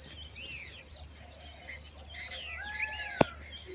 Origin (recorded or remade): recorded